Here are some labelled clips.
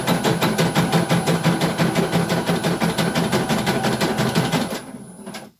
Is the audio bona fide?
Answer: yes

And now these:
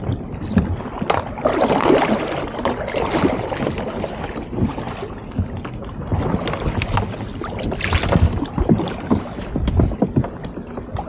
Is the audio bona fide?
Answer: yes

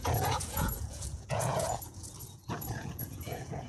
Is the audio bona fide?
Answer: no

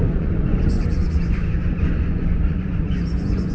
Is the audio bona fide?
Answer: no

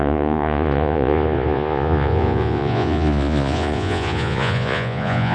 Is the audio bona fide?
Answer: no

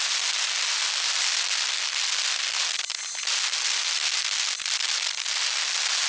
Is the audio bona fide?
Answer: yes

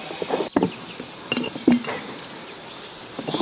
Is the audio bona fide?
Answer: yes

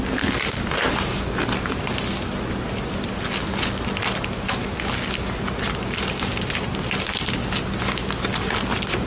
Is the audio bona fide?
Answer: yes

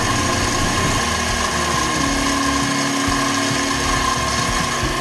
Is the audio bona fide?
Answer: yes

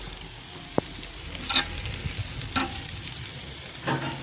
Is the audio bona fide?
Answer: yes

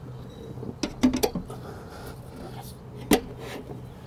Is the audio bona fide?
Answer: yes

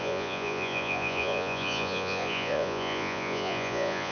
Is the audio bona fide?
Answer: no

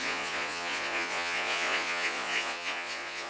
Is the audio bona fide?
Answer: no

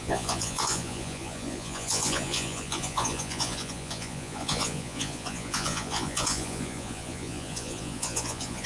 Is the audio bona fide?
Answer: no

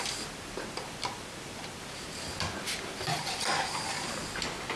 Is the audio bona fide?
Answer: yes